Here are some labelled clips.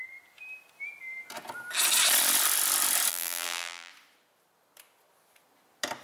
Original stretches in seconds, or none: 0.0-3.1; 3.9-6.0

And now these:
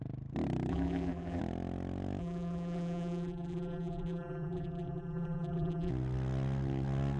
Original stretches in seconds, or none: 0.0-0.7; 1.4-2.2; 5.9-7.2

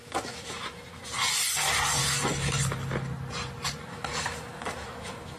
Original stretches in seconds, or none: 1.2-2.0; 2.6-3.9

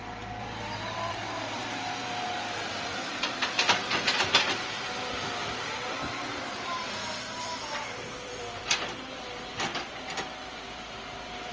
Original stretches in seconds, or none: 3.4-4.6

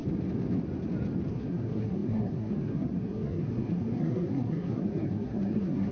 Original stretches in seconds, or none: 0.0-1.3

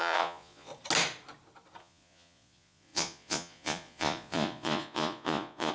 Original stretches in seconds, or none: 0.7-1.8

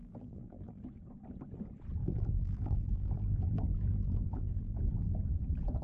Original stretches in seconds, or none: 0.8-2.0; 4.8-5.8